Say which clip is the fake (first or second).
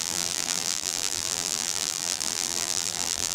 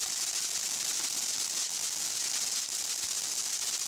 first